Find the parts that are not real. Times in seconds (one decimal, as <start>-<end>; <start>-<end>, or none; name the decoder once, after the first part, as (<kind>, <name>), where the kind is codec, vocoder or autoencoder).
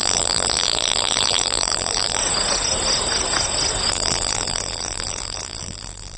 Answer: 0.0-2.2 (vocoder, BigVGAN v2); 3.9-6.2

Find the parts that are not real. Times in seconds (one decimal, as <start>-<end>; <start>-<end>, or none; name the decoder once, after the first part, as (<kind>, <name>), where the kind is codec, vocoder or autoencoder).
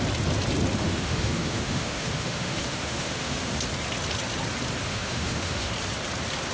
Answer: 0.8-3.5 (autoencoder, DAC-VAE); 4.9-5.7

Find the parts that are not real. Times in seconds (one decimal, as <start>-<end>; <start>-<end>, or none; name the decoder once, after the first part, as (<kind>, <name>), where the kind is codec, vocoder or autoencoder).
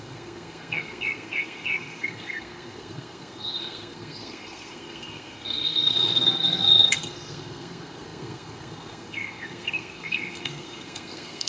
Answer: 0.0-11.5 (codec, SNAC)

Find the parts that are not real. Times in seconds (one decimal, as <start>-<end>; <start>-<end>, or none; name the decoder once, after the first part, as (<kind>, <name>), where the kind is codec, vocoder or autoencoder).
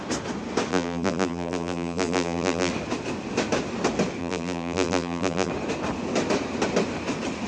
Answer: 0.7-2.7 (vocoder, BigVGAN v2); 4.2-5.5